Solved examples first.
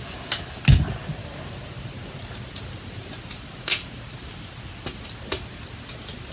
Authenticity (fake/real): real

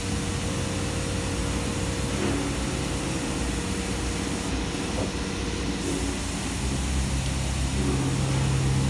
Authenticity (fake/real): real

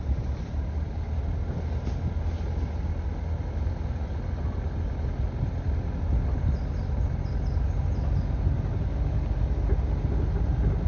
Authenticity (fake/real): real